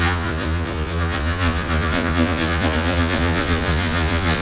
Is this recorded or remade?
remade